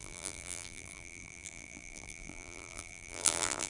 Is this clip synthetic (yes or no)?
yes